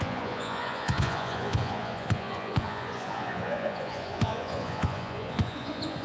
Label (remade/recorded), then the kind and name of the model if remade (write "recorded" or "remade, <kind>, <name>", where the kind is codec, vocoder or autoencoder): remade, vocoder, Vocos